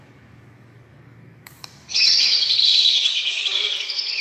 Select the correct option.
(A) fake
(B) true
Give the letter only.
A